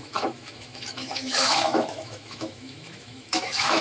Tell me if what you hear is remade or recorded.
remade